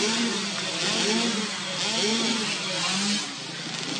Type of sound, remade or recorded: recorded